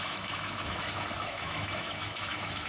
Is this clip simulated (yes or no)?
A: yes